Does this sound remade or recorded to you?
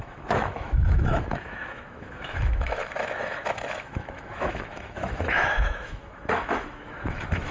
remade